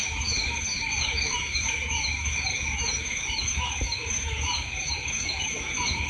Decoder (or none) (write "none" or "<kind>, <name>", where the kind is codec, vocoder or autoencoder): autoencoder, DAC-VAE